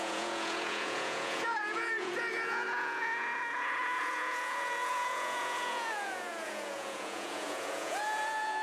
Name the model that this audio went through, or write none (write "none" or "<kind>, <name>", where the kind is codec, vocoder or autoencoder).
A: vocoder, Vocos